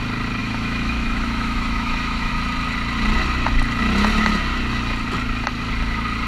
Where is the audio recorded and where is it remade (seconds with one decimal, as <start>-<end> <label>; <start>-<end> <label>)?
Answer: 0.0-0.4 recorded; 0.4-2.3 remade; 2.3-6.3 recorded